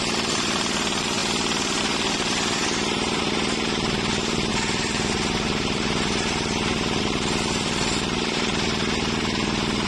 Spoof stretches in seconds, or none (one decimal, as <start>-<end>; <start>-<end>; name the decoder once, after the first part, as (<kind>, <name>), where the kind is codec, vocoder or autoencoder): 0.0-1.2 (vocoder, BigVGAN v2); 1.8-9.9